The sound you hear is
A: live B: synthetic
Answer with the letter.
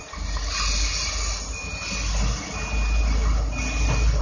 A